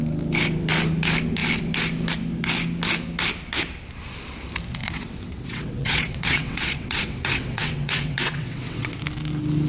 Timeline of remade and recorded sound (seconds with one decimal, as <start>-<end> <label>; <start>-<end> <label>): 0.0-4.8 recorded; 4.8-9.0 remade; 9.0-9.7 recorded